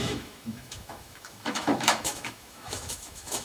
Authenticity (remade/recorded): remade